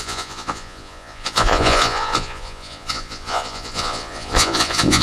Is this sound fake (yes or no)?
yes